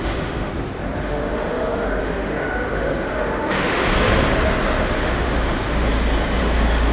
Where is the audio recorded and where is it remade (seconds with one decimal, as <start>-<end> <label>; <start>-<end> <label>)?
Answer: 0.0-0.5 remade; 0.5-1.0 recorded; 1.0-3.9 remade; 3.9-4.8 recorded; 4.8-5.9 remade; 5.9-6.4 recorded; 6.4-6.9 remade